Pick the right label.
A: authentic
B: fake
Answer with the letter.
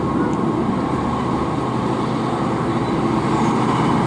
A